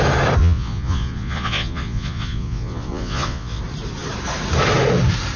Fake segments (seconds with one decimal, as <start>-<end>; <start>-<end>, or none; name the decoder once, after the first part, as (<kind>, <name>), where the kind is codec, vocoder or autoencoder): 0.4-3.6 (vocoder, Vocos)